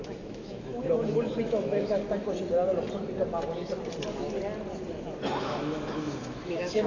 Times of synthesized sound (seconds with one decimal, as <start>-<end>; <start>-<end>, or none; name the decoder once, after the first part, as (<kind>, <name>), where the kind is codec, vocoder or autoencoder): 0.0-2.0 (autoencoder, DAC-VAE); 5.4-6.9